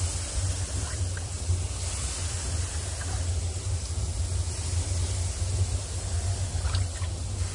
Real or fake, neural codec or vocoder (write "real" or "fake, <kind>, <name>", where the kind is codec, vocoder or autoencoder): real